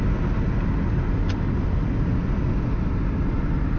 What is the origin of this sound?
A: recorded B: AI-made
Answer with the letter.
A